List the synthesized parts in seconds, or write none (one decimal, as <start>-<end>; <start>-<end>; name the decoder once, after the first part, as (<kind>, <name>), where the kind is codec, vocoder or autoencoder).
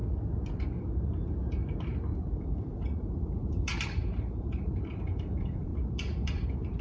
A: 2.4-6.8 (vocoder, BigVGAN v2)